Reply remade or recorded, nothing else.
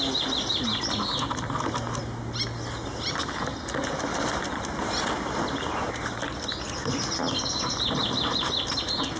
recorded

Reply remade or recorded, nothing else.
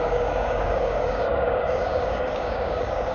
remade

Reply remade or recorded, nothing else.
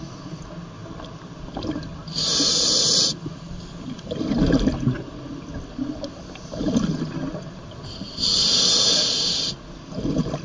recorded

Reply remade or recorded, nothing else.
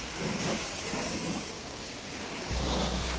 remade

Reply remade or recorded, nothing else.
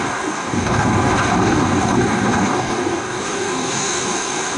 remade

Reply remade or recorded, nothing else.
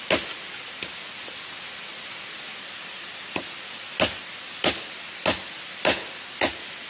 recorded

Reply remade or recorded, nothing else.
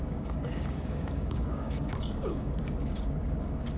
remade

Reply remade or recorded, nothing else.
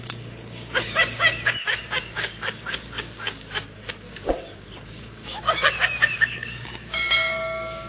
remade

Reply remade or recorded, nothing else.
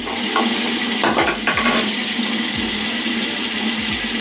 recorded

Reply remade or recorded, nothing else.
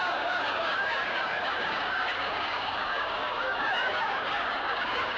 remade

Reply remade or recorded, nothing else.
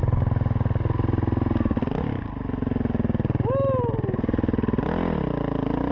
recorded